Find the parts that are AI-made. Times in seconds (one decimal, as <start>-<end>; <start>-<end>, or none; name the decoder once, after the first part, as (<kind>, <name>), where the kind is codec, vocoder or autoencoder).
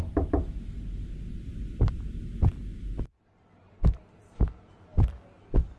1.5-2.5 (vocoder, BigVGAN v2); 3.3-4.3